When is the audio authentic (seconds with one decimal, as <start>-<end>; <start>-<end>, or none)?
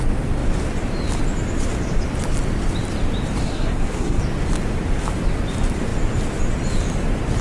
0.0-3.4; 4.2-7.4